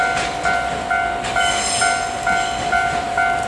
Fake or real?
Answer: real